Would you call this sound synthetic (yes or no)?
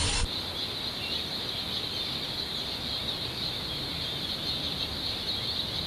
no